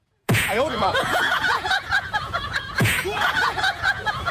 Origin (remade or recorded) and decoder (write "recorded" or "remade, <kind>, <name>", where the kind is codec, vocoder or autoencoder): remade, vocoder, Vocos